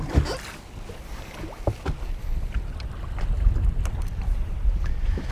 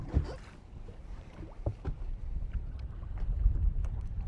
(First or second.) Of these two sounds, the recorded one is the first